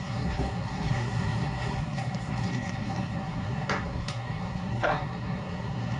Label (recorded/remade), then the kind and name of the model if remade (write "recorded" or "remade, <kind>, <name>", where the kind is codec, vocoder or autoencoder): remade, codec, SNAC